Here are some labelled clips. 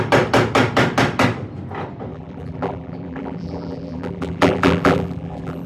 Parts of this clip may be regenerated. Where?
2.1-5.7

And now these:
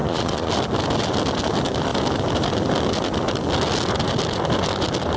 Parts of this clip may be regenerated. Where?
0.0-0.5

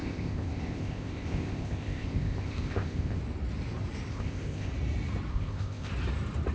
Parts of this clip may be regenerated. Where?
0.0-3.2; 4.1-4.7; 5.3-5.9

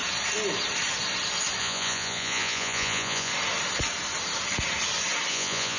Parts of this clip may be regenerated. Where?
1.6-3.3; 5.3-5.8

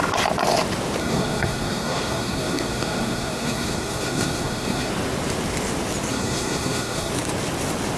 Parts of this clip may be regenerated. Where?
1.0-4.9; 6.1-7.1